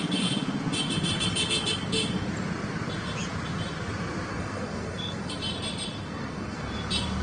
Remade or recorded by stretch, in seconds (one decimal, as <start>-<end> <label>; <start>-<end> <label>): 0.0-4.3 recorded; 4.3-5.4 remade; 5.4-6.0 recorded; 6.0-6.7 remade; 6.7-7.2 recorded